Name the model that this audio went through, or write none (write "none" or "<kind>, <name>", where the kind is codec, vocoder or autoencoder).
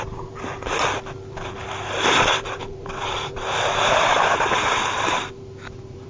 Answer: vocoder, BigVGAN v2